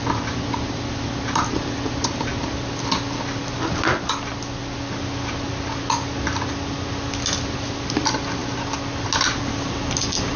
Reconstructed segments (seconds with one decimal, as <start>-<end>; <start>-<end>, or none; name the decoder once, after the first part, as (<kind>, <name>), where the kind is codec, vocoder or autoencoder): none